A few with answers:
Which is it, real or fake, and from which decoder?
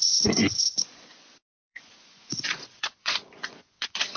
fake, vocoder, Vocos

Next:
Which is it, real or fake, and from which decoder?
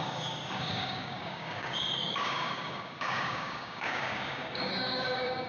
fake, codec, DAC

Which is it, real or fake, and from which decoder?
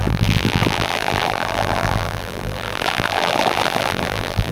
fake, vocoder, BigVGAN v2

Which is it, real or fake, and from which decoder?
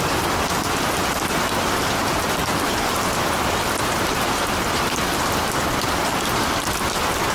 fake, vocoder, BigVGAN v2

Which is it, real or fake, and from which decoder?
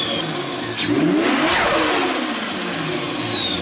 real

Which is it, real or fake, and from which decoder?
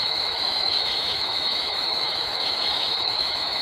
fake, autoencoder, DAC-VAE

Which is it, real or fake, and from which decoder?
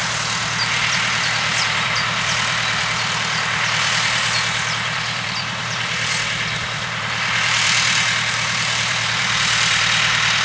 fake, vocoder, BigVGAN v2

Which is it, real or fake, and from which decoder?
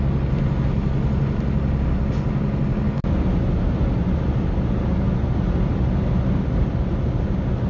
real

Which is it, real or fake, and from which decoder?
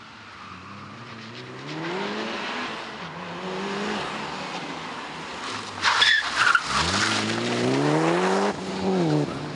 real